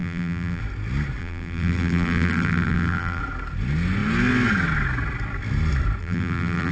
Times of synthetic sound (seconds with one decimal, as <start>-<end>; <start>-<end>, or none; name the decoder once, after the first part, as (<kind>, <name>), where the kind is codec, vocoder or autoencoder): 0.0-0.6 (vocoder, BigVGAN v2); 1.2-3.2; 6.0-6.7